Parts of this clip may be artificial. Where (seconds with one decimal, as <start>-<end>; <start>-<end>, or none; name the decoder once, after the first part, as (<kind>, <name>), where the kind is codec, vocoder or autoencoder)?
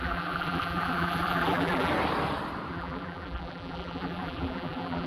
0.0-1.9 (vocoder, BigVGAN v2); 2.7-5.1